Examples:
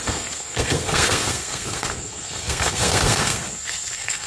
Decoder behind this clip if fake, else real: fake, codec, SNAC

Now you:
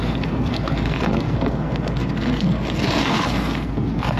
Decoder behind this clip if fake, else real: fake, codec, SNAC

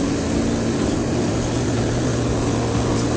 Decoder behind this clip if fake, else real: real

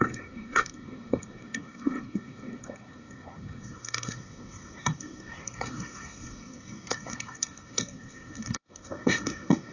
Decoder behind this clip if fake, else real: fake, codec, SNAC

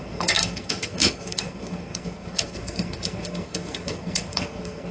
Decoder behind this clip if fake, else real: fake, codec, SNAC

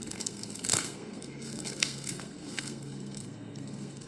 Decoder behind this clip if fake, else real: fake, codec, SNAC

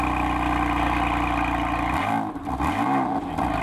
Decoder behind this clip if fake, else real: real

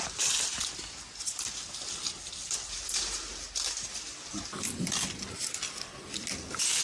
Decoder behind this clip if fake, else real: real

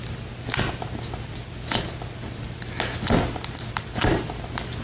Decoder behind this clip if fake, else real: real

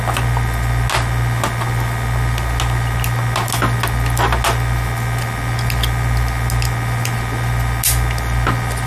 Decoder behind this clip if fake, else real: real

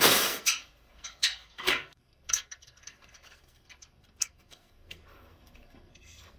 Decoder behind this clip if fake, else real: fake, codec, SNAC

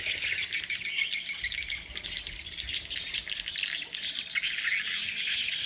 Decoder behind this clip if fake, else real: real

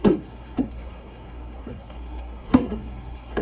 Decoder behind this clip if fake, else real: fake, codec, SNAC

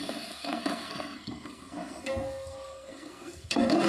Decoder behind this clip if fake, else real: fake, codec, SNAC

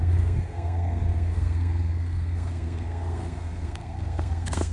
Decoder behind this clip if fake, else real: fake, codec, SNAC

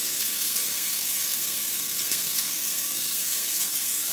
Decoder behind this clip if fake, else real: fake, codec, SNAC